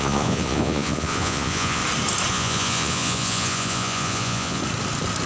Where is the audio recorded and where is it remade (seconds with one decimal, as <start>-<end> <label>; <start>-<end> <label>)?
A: 0.0-1.8 remade; 1.8-2.3 recorded; 2.3-4.6 remade; 4.6-5.3 recorded